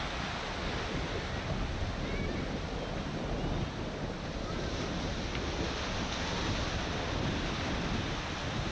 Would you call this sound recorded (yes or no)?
yes